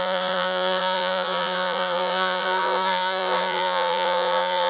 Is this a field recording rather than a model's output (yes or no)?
no